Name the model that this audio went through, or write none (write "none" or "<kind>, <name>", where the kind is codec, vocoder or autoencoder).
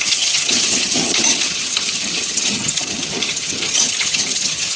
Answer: vocoder, HiFi-GAN